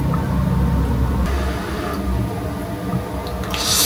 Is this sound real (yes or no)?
yes